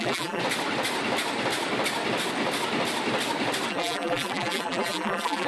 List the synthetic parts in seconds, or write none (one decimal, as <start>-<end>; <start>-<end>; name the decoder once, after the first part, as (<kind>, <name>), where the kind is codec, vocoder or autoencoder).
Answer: 0.0-0.4 (vocoder, BigVGAN v2); 3.7-5.5